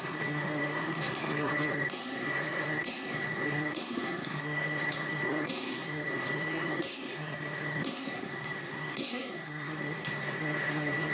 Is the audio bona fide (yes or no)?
no